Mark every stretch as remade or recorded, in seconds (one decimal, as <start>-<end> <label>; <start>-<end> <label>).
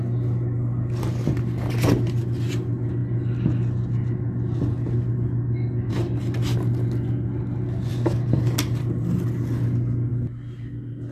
0.0-11.1 recorded